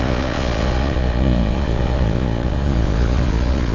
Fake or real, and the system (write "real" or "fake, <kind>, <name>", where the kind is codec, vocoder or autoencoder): fake, vocoder, Vocos